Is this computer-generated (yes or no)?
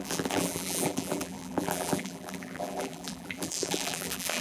yes